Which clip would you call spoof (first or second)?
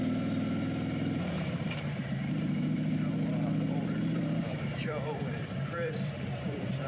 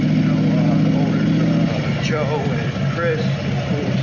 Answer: first